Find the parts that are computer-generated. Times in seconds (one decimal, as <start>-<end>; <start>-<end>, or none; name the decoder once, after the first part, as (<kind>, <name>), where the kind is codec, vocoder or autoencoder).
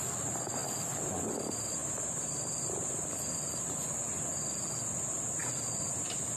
0.0-0.6 (vocoder, BigVGAN v2); 1.4-1.8; 3.2-4.3; 4.8-5.4; 5.9-6.4